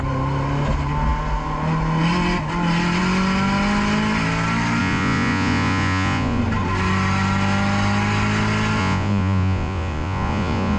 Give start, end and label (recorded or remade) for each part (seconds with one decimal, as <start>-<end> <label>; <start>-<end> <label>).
0.0-4.8 recorded; 4.8-6.4 remade; 6.4-8.8 recorded; 8.8-10.8 remade